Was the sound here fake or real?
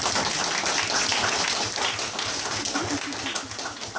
real